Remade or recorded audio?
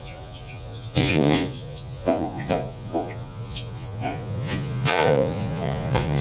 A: remade